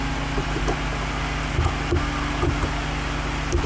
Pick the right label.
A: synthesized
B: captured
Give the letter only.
B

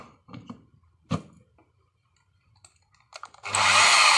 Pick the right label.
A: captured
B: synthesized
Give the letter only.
B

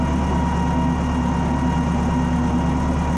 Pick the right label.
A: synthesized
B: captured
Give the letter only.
B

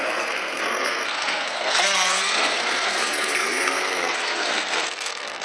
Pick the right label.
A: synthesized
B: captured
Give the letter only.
A